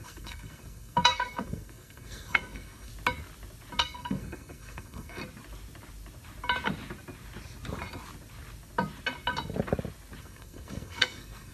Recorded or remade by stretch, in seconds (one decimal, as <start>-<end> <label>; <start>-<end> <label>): 0.0-2.9 remade; 2.9-3.8 recorded; 3.8-5.2 remade; 5.2-10.2 recorded; 10.2-11.5 remade